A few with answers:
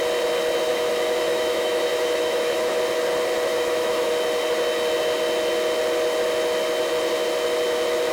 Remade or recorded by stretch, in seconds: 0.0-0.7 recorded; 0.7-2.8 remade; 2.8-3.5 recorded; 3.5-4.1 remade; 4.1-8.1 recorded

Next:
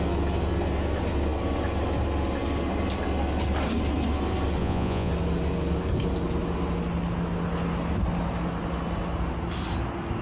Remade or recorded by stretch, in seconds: 0.0-4.6 recorded; 4.6-5.1 remade; 5.1-10.2 recorded

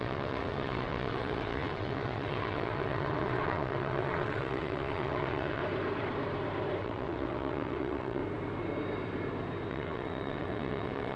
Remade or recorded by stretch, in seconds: 0.0-5.6 remade; 5.6-6.8 recorded; 6.8-8.2 remade; 8.2-9.7 recorded; 9.7-11.2 remade

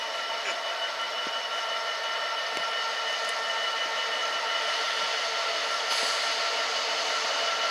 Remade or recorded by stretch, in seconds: 0.0-7.7 recorded

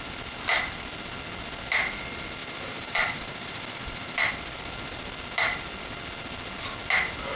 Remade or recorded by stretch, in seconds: 0.0-2.4 recorded; 2.4-4.3 remade; 4.3-7.4 recorded